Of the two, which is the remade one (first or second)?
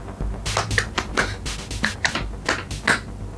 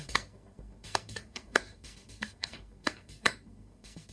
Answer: second